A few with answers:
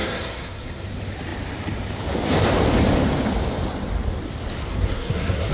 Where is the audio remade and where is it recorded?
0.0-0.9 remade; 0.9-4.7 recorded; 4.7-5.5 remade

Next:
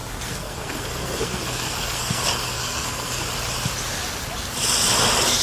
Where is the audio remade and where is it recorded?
0.0-3.2 remade; 3.2-5.4 recorded

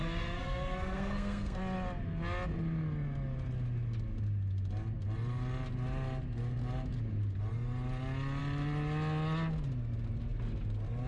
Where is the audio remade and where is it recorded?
0.0-1.6 remade; 1.6-11.1 recorded

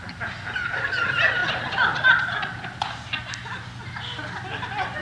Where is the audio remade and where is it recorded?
0.0-5.0 recorded

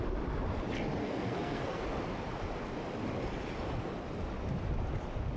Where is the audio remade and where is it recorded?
0.0-1.0 recorded; 1.0-1.8 remade; 1.8-5.4 recorded